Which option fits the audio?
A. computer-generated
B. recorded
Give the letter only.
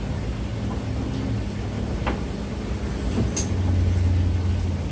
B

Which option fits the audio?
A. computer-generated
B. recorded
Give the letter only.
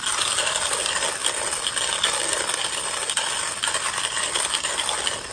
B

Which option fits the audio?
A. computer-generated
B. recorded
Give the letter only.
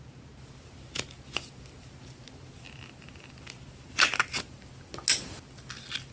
B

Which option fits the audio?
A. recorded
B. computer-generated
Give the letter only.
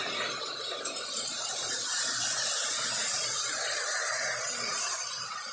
B